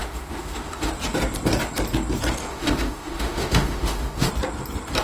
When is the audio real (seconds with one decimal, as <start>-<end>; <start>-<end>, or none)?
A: 0.9-2.5; 4.3-5.0